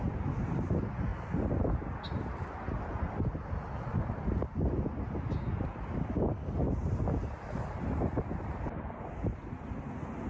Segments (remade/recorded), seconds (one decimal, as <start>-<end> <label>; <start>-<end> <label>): 0.0-10.3 recorded